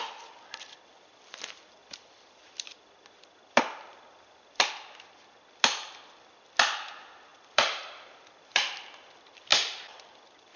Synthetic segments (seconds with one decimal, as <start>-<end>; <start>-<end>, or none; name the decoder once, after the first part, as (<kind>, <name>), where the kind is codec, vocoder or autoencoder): 1.8-4.7 (vocoder, BigVGAN v2); 7.3-9.1